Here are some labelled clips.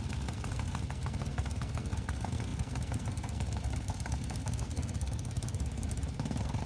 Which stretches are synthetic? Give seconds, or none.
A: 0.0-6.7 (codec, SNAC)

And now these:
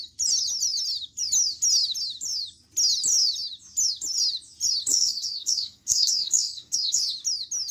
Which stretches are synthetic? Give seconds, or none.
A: 4.9-7.0 (codec, SNAC)

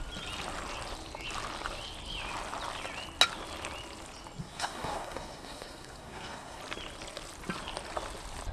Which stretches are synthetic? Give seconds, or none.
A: 4.4-6.6 (codec, SNAC)

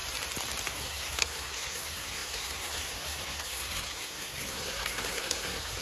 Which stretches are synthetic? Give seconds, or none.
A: 0.7-5.8 (codec, SNAC)

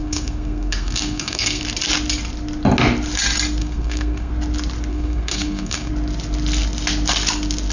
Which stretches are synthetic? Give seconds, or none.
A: 0.0-1.6 (codec, SNAC); 3.6-4.3; 4.9-5.9